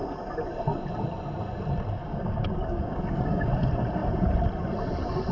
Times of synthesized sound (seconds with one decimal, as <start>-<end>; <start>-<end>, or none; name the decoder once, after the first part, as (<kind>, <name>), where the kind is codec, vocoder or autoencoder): 2.0-3.5 (codec, DAC)